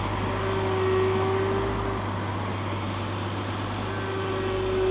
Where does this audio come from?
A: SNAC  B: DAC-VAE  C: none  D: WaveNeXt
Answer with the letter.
C